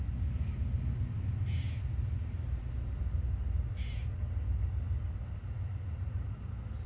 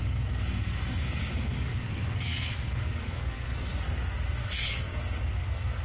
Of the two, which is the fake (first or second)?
second